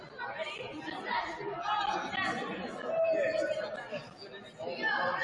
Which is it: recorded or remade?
recorded